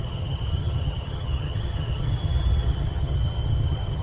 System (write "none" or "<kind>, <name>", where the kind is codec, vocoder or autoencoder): vocoder, HiFi-GAN